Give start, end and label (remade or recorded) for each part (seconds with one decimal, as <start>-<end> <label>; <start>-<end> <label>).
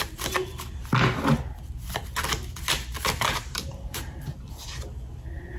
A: 0.0-3.5 recorded; 3.5-4.5 remade; 4.5-5.6 recorded